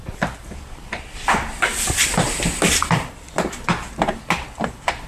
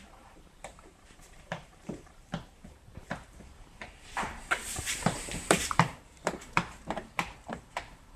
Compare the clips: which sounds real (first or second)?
first